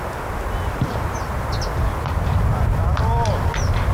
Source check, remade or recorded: recorded